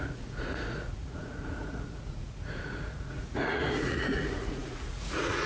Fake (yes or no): yes